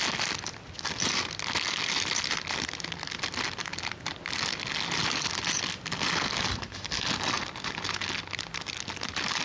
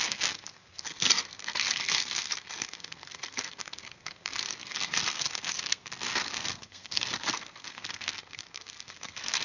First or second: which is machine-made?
second